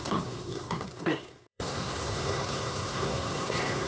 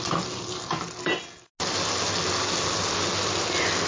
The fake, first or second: first